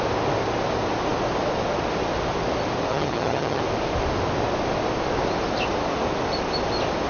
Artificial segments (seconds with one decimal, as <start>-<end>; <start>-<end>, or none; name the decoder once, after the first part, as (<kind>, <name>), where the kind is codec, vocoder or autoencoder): 2.9-3.6 (vocoder, HiFi-GAN)